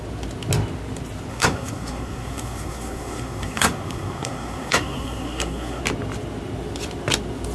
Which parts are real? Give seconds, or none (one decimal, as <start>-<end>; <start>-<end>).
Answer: 0.0-1.3; 5.8-7.5